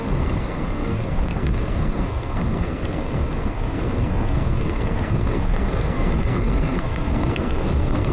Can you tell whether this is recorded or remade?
remade